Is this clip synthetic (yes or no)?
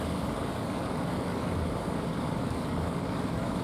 yes